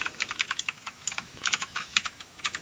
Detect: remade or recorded remade